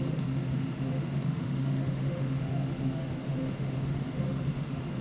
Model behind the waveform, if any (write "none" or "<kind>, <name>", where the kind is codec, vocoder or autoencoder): autoencoder, DAC-VAE